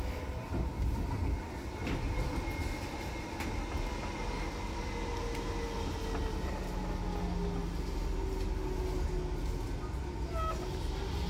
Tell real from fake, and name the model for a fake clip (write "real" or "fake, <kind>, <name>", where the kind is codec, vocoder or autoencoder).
real